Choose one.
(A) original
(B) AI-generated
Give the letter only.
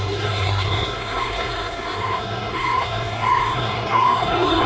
B